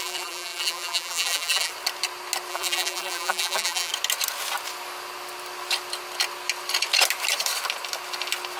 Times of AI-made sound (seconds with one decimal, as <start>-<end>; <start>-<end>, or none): 0.0-1.7; 2.5-3.9